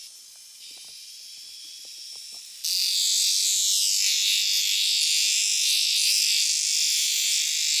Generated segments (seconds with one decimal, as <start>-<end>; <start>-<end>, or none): none